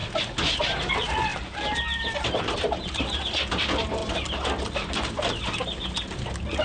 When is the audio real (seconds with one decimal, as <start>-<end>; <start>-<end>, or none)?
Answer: 0.0-1.3; 2.4-6.6